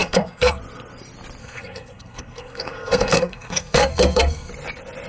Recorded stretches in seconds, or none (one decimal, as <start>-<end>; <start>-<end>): 0.6-1.4; 4.5-5.1